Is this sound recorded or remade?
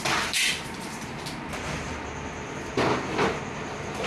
recorded